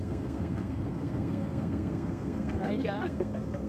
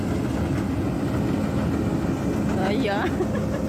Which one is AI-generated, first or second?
first